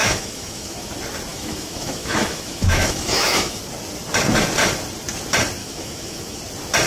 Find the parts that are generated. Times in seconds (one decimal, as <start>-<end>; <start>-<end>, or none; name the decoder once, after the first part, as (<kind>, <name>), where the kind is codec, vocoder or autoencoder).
0.0-0.9 (autoencoder, DAC-VAE); 1.3-3.6; 5.6-6.4

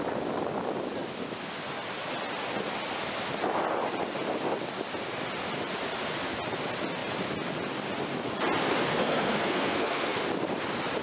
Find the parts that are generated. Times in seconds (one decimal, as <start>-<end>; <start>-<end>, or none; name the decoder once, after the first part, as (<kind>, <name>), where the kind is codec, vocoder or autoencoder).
8.9-10.2 (codec, SNAC)

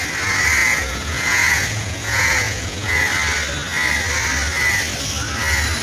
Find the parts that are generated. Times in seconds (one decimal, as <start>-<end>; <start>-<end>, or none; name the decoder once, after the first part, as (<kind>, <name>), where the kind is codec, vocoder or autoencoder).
0.6-3.0 (vocoder, Vocos)

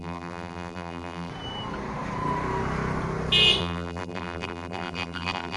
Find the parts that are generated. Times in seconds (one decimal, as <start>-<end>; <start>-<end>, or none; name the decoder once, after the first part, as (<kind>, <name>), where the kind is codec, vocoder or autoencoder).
0.0-1.3 (vocoder, BigVGAN v2); 3.6-5.6

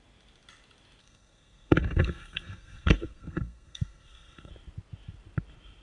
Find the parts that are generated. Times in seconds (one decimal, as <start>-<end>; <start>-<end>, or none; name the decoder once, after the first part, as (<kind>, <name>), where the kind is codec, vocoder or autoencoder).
1.0-4.5 (codec, SNAC)

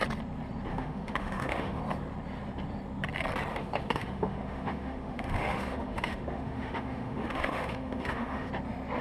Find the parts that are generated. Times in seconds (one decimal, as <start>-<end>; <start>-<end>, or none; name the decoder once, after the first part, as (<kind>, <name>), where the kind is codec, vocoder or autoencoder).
0.7-1.8 (autoencoder, DAC-VAE); 3.5-8.5